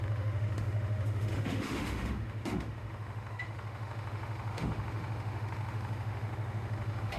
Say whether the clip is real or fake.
fake